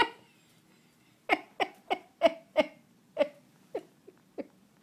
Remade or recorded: recorded